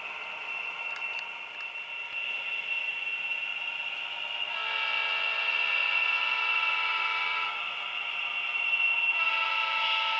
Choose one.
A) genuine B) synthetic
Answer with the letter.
A